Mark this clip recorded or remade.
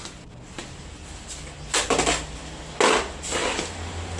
recorded